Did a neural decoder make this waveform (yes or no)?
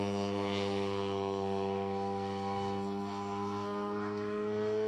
yes